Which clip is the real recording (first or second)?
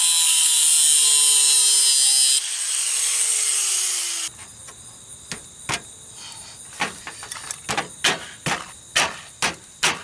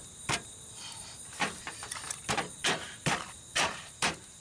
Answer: first